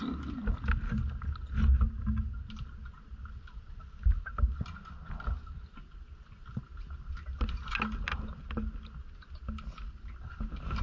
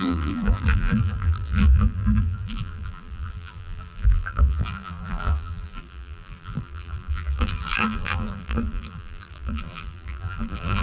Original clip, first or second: first